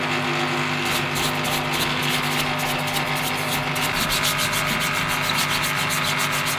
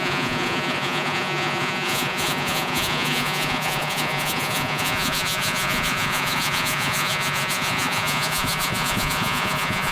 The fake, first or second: second